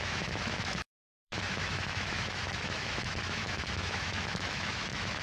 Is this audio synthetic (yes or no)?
yes